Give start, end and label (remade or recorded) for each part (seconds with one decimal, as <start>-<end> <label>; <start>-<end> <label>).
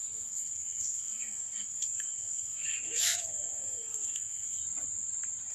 0.0-4.6 remade; 4.6-5.5 recorded